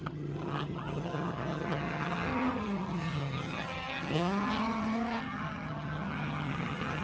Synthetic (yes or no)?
yes